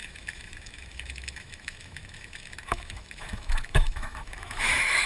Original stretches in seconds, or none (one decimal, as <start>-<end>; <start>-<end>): none